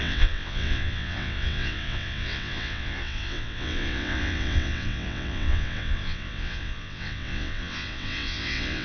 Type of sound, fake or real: fake